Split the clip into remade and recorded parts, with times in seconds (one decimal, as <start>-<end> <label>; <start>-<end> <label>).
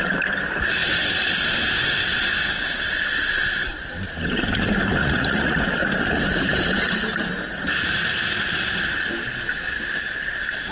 0.0-5.0 recorded; 5.0-5.6 remade; 5.6-10.7 recorded